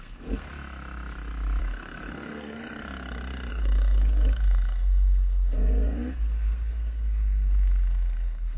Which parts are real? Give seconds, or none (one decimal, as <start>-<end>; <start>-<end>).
0.5-1.6; 2.6-3.5